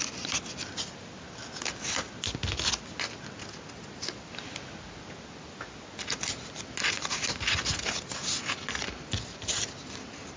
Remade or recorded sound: recorded